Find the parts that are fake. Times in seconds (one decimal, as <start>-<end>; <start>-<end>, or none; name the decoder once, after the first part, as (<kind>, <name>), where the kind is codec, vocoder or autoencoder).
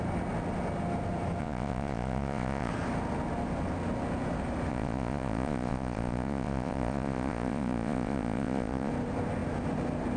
1.4-2.7 (vocoder, Vocos); 4.7-8.9